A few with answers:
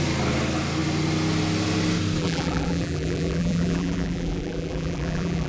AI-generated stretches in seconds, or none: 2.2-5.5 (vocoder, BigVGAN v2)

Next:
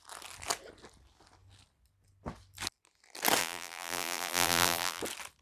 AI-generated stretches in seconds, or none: 3.4-5.0 (vocoder, BigVGAN v2)

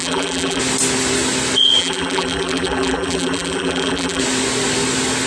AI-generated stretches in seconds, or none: 0.0-0.6 (vocoder, BigVGAN v2); 1.8-4.2